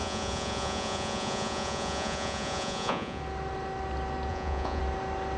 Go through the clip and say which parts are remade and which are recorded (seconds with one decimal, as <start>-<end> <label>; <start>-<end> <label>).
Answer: 0.0-3.2 remade; 3.2-4.3 recorded; 4.3-4.8 remade; 4.8-5.4 recorded